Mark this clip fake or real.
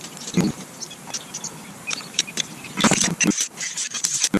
fake